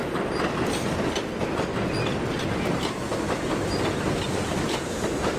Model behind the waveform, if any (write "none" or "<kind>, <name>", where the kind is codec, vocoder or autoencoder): none